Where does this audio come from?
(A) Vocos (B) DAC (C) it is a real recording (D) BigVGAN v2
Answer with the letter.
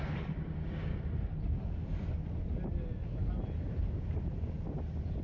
C